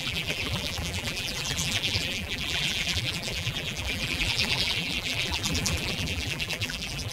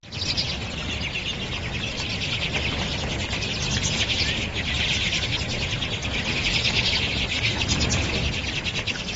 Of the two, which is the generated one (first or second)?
first